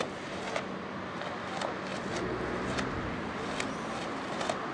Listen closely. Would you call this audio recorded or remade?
recorded